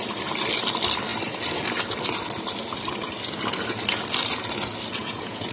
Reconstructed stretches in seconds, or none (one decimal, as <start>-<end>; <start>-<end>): 5.0-5.5